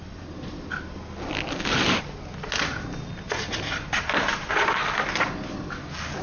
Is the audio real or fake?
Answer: real